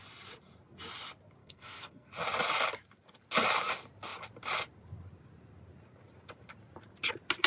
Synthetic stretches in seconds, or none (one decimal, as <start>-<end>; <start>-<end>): 1.4-2.1